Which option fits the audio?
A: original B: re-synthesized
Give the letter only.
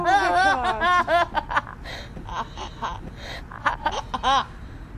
A